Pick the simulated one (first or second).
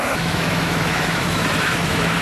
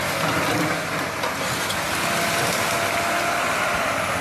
first